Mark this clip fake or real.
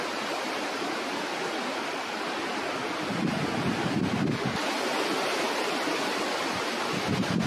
real